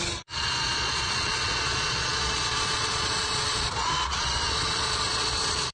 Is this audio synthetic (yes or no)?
yes